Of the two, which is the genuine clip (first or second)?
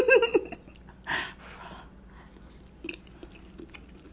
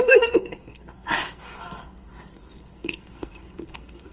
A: first